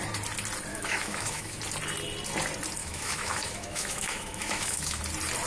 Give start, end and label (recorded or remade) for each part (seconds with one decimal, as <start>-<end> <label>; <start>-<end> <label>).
0.0-0.7 recorded; 0.7-1.6 remade; 1.6-2.8 recorded; 2.8-5.0 remade; 5.0-5.5 recorded